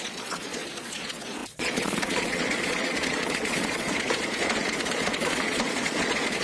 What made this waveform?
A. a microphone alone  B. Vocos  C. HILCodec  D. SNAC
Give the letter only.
B